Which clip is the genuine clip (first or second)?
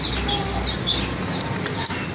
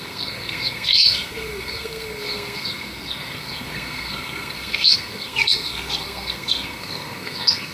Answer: first